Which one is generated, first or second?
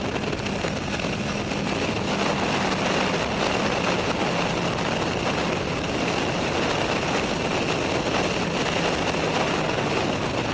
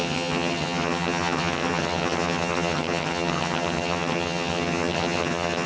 second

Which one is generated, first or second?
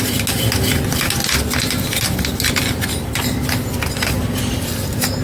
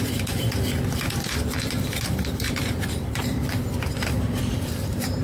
second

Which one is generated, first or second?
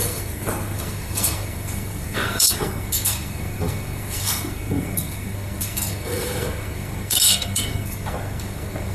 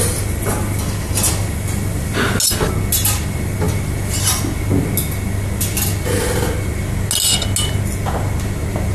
first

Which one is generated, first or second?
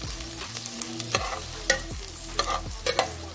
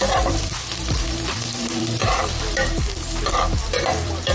second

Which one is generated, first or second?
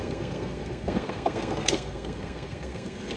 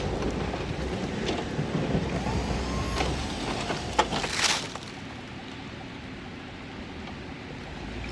first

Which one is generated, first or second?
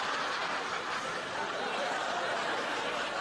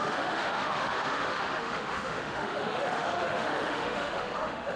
second